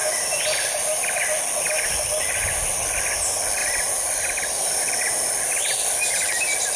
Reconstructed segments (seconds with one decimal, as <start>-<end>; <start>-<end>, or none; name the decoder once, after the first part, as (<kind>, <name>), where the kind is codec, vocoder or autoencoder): 3.6-6.3 (vocoder, BigVGAN v2)